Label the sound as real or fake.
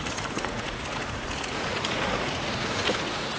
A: fake